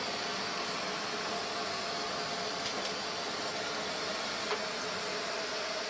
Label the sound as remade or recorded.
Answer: recorded